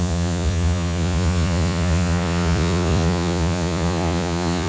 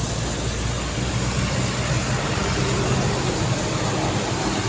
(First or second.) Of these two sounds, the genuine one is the second